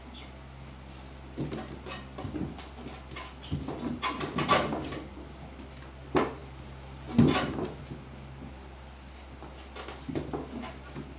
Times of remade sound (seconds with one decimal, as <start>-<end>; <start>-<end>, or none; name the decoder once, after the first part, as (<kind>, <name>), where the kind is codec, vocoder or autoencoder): none